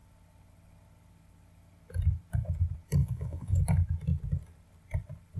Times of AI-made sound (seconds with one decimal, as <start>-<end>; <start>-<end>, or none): 3.0-3.6